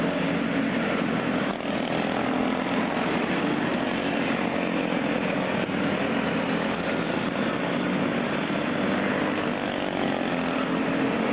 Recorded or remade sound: recorded